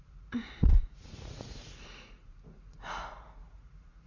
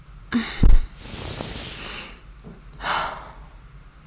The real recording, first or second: second